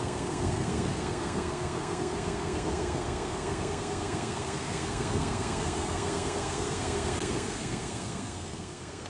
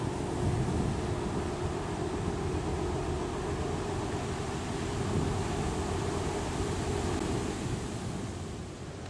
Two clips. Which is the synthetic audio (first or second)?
first